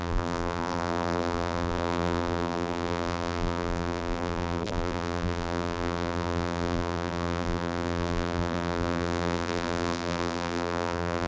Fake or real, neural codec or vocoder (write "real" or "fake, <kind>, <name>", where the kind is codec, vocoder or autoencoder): fake, vocoder, BigVGAN v2